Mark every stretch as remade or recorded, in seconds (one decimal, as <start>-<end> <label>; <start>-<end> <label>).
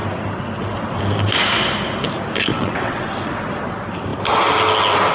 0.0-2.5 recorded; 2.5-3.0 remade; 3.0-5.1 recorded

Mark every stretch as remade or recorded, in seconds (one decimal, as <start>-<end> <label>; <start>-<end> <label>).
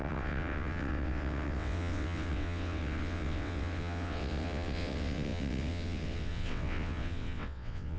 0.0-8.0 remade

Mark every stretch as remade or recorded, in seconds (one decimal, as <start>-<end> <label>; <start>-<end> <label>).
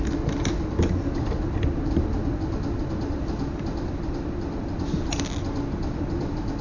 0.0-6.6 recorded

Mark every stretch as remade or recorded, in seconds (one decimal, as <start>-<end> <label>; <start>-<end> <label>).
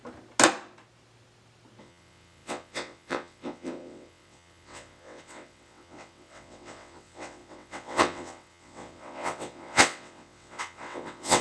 0.0-1.8 recorded; 1.8-11.4 remade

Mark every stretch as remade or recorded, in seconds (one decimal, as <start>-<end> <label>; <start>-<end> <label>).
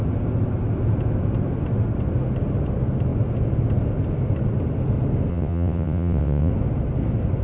0.0-5.3 recorded; 5.3-6.5 remade; 6.5-7.4 recorded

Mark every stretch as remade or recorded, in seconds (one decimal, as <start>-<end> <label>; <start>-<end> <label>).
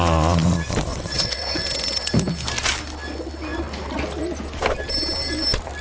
0.0-0.9 recorded; 0.9-2.1 remade; 2.1-5.8 recorded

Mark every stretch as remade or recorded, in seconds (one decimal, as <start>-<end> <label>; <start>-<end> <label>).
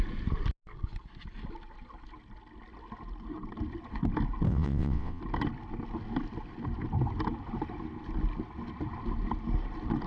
0.0-4.5 recorded; 4.5-5.2 remade; 5.2-10.1 recorded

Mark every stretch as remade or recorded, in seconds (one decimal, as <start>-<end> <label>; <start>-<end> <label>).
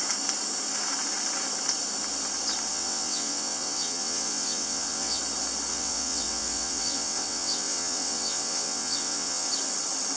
0.0-2.7 recorded; 2.7-5.2 remade; 5.2-5.7 recorded; 5.7-9.5 remade; 9.5-10.2 recorded